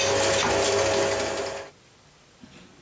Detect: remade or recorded recorded